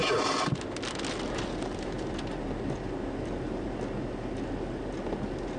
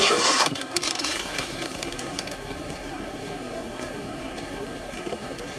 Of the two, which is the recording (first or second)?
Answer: first